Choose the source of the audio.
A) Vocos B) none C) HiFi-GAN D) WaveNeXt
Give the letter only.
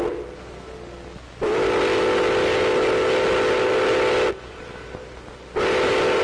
B